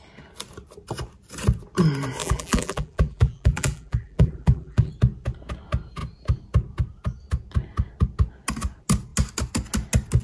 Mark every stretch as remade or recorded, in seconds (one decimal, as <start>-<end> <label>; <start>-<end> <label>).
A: 0.0-2.2 recorded; 2.2-4.9 remade; 4.9-10.2 recorded